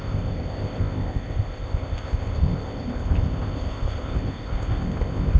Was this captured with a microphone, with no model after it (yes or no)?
no